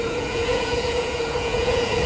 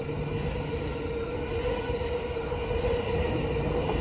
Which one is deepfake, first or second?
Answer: first